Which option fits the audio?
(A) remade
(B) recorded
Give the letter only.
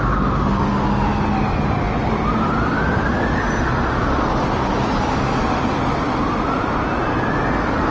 B